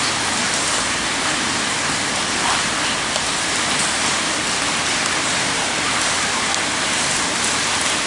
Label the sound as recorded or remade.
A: recorded